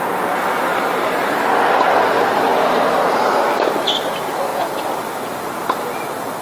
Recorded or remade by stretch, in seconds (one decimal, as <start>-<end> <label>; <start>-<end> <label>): 0.0-0.7 recorded; 0.7-1.5 remade; 1.5-6.4 recorded